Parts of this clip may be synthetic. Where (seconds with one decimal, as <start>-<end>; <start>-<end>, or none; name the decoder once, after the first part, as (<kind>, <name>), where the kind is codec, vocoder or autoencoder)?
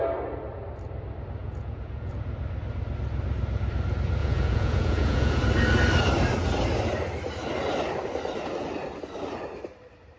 1.4-2.1 (vocoder, Vocos); 4.2-5.4